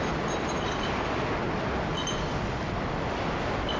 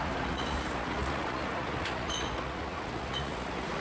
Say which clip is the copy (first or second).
second